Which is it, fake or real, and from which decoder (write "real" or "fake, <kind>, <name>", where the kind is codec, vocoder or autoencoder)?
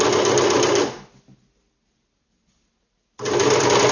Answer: real